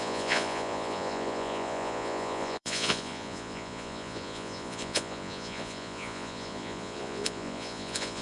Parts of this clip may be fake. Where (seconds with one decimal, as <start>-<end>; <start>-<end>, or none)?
0.0-8.2